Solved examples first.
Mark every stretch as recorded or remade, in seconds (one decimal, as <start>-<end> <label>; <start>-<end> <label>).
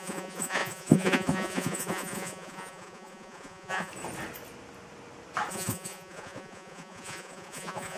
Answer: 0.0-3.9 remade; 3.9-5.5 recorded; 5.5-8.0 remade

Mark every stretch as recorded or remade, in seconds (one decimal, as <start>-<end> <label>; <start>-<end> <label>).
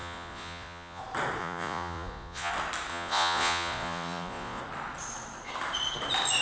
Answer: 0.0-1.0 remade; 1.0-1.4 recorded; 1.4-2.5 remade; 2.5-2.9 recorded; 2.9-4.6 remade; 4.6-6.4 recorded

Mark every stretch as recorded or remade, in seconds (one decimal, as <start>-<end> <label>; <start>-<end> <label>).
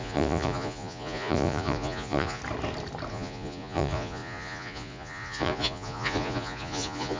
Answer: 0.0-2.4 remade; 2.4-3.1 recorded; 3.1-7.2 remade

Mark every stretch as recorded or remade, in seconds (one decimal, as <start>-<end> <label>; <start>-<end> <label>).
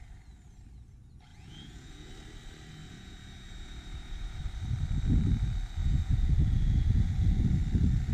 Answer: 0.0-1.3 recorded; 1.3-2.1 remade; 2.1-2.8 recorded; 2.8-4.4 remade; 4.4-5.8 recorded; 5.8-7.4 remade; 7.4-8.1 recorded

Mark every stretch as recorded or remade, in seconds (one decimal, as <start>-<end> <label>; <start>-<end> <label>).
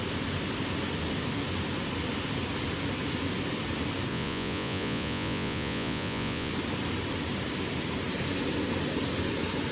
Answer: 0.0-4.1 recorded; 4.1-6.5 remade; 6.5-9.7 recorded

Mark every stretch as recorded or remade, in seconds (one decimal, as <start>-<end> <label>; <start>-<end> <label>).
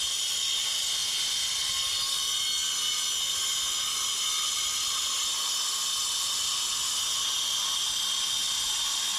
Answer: 0.0-9.2 recorded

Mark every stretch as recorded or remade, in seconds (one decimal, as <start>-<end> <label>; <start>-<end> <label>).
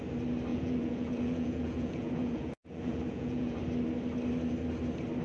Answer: 0.0-0.5 recorded; 0.5-3.6 remade; 3.6-5.2 recorded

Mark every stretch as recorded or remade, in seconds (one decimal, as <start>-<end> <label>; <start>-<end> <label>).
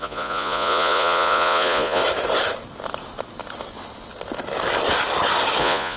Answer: 0.0-2.0 remade; 2.0-5.6 recorded; 5.6-6.0 remade